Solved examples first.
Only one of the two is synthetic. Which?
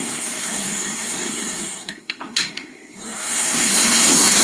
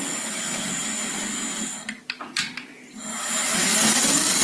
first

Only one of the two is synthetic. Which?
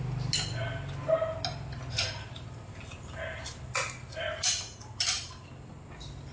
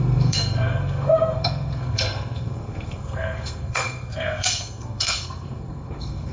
second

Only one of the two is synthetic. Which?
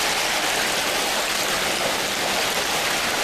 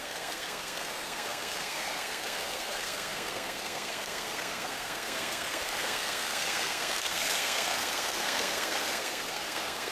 second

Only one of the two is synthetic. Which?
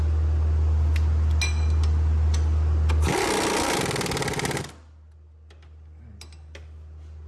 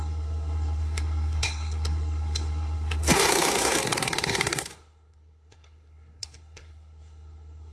second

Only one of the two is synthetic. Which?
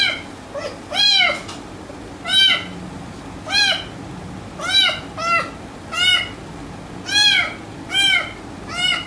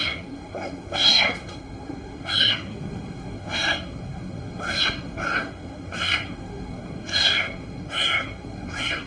second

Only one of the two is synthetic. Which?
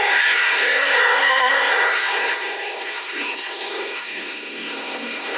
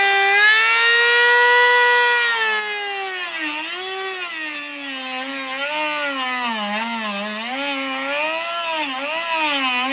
first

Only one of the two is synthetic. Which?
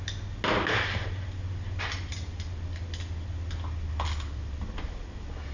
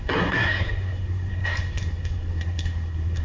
second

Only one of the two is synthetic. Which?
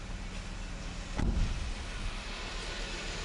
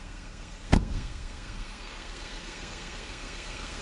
second